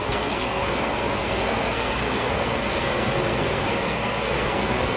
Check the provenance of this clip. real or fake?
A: fake